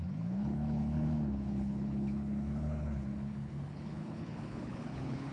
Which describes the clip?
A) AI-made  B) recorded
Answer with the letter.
A